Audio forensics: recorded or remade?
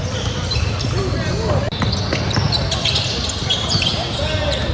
recorded